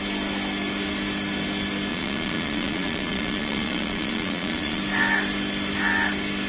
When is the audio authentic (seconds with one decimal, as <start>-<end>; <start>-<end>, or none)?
0.0-1.9; 4.8-6.5